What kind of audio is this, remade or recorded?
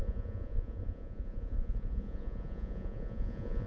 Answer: remade